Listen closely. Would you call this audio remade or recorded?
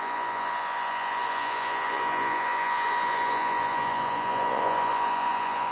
remade